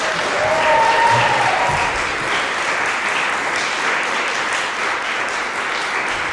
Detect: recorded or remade recorded